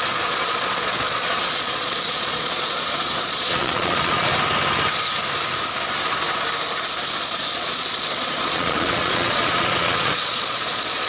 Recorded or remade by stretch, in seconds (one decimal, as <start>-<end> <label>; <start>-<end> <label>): 0.0-4.3 remade; 4.3-7.2 recorded; 7.2-11.1 remade